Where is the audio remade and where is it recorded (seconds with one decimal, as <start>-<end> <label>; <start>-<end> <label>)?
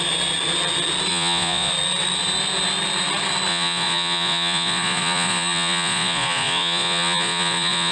0.0-1.1 recorded; 1.1-1.7 remade; 1.7-3.5 recorded; 3.5-7.9 remade